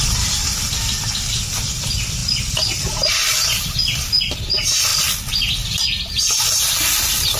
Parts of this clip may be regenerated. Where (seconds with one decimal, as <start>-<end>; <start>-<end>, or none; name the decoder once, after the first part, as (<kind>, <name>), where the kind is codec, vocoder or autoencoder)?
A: 2.2-4.4 (vocoder, BigVGAN v2)